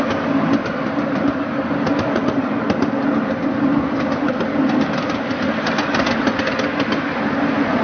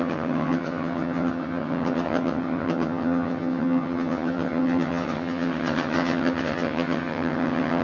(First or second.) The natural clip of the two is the first